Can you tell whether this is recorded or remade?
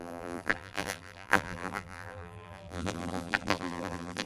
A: remade